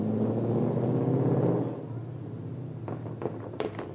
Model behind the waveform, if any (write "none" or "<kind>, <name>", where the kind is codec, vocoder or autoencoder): none